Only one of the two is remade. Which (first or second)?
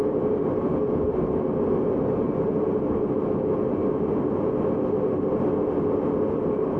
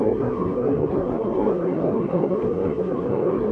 second